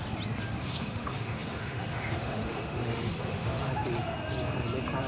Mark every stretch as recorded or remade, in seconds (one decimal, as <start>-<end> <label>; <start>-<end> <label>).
0.0-0.6 recorded; 0.6-3.7 remade; 3.7-5.1 recorded